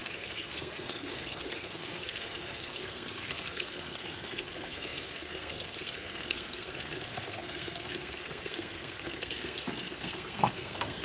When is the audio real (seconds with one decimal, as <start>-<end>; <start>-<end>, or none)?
none